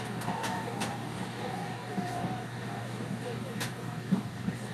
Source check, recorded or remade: remade